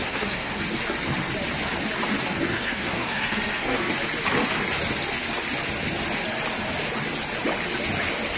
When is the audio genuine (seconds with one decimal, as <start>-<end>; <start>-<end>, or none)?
0.6-2.5; 3.9-8.4